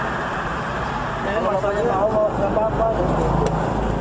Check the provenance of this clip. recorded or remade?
recorded